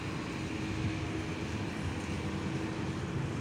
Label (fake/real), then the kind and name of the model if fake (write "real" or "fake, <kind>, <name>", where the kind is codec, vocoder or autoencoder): real